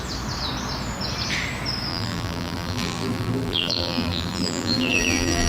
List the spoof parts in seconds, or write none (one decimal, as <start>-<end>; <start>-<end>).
1.9-5.5